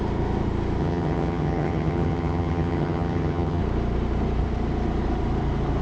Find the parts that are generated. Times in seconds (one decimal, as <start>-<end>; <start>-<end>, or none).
0.8-3.6